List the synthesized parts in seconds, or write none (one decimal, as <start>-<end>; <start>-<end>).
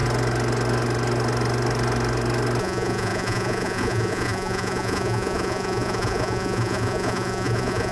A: 2.6-7.9